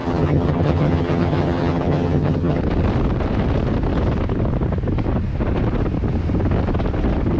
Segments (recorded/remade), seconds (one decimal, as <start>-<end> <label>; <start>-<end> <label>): 0.0-2.6 remade; 2.6-7.4 recorded